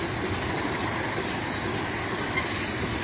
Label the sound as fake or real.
real